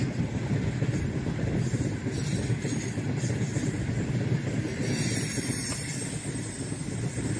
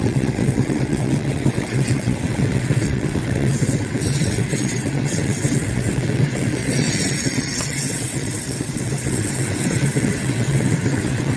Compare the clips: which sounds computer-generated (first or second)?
second